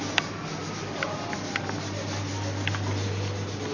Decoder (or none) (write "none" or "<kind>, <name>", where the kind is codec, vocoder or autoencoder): none